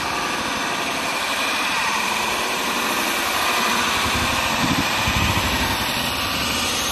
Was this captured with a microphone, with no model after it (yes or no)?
no